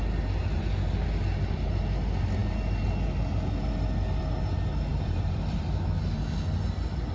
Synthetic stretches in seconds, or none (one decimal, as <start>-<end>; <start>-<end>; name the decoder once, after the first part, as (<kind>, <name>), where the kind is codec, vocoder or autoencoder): 4.9-5.6 (vocoder, BigVGAN v2)